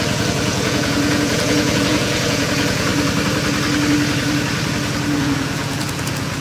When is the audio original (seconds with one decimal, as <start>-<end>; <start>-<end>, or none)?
2.9-5.2